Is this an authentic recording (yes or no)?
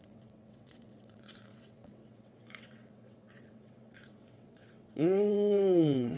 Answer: no